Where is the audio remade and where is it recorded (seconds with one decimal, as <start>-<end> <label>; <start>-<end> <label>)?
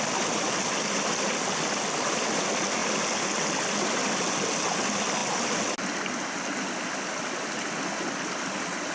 0.0-8.9 recorded